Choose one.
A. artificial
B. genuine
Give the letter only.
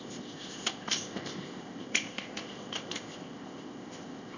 A